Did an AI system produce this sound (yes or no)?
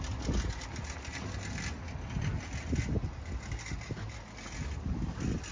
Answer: no